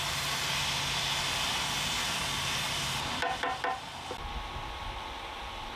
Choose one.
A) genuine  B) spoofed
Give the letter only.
A